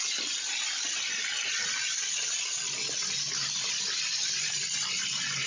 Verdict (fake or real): real